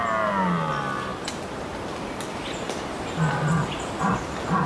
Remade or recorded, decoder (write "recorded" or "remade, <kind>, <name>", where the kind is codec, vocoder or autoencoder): recorded